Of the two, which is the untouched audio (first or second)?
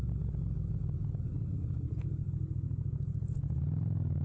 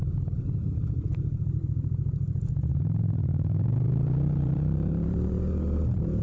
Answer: first